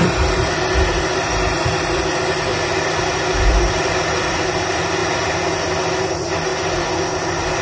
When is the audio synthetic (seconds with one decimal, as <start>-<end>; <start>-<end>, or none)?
0.0-2.5; 3.5-5.0; 5.8-6.5